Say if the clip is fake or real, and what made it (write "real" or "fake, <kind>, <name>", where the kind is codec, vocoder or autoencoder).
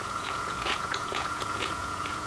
fake, vocoder, Vocos